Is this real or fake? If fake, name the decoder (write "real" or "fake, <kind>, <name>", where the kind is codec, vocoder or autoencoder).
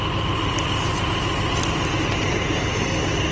real